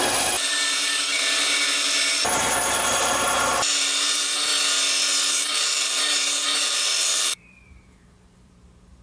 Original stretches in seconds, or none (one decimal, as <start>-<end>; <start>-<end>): 4.5-5.3